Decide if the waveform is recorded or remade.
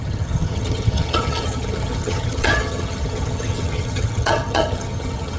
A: remade